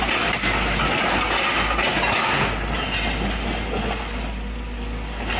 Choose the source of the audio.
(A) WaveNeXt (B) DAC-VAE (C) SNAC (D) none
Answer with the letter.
D